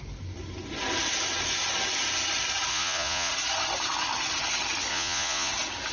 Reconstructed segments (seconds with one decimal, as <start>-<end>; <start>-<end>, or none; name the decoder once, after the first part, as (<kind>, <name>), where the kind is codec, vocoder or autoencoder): 2.7-3.3 (vocoder, Vocos); 4.9-5.5